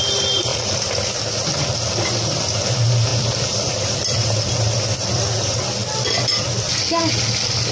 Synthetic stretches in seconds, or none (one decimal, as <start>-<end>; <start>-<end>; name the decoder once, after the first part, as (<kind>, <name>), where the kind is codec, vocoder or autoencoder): 0.5-1.0 (vocoder, BigVGAN v2); 3.1-4.5